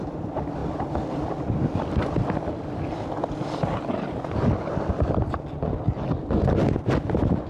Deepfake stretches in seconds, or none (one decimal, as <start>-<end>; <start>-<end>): 0.6-5.1